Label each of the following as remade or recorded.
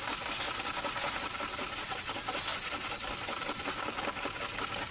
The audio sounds recorded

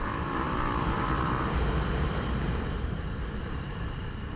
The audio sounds remade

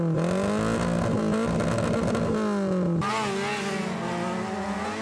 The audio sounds recorded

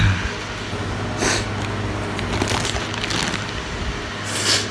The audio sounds recorded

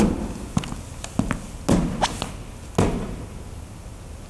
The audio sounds recorded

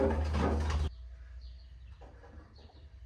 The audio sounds recorded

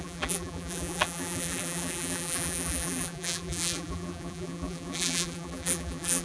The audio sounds remade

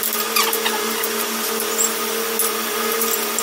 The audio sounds recorded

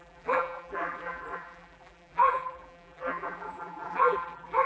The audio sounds remade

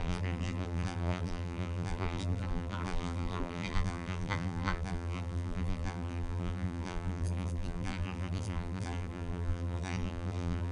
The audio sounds remade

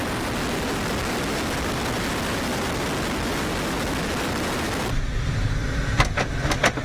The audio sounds recorded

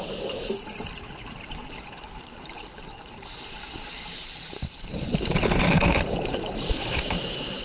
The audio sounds remade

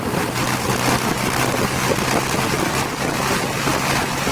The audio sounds recorded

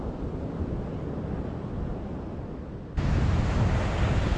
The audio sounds recorded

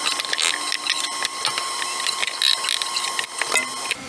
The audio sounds recorded